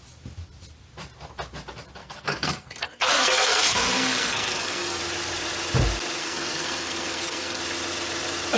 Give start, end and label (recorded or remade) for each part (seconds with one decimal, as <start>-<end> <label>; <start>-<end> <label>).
0.0-2.0 recorded; 2.0-5.0 remade; 5.0-6.2 recorded; 6.2-7.6 remade; 7.6-8.6 recorded